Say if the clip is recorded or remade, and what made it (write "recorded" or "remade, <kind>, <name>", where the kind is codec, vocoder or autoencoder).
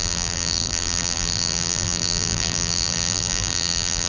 remade, vocoder, BigVGAN v2